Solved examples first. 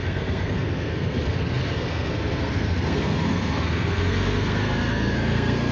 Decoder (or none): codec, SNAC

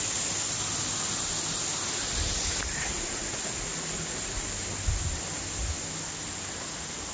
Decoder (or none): none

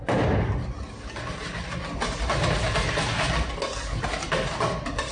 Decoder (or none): none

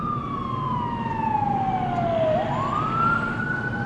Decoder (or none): none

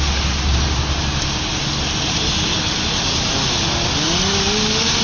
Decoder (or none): none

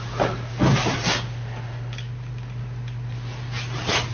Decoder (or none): none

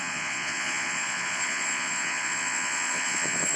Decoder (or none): vocoder, Vocos